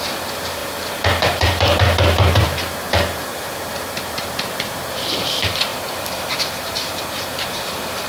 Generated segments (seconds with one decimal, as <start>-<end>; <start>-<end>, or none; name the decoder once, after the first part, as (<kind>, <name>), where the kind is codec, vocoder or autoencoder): 0.0-8.1 (vocoder, BigVGAN v2)